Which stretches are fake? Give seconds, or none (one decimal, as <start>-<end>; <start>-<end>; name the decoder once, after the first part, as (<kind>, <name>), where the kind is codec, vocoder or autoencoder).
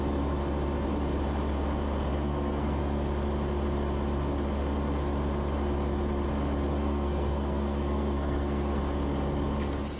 2.1-2.8 (codec, SNAC); 6.7-8.8